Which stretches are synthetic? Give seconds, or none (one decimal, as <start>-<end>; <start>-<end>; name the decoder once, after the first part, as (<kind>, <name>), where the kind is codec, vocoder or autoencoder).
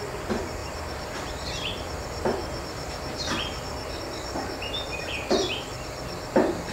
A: 0.6-4.0 (vocoder, BigVGAN v2)